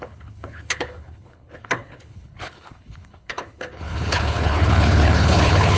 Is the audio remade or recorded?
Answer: remade